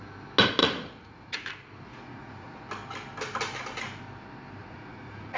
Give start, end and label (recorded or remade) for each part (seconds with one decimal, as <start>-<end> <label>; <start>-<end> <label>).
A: 0.0-0.6 recorded; 0.6-1.5 remade; 1.5-1.9 recorded; 1.9-2.6 remade; 2.6-4.6 recorded; 4.6-5.4 remade